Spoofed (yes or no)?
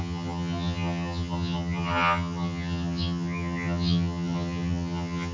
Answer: yes